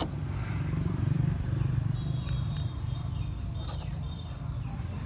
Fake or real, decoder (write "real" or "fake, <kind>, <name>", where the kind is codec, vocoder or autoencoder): fake, vocoder, BigVGAN v2